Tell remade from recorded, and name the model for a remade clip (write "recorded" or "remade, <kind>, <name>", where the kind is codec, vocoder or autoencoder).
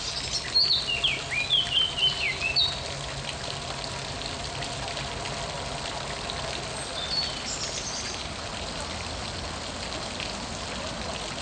recorded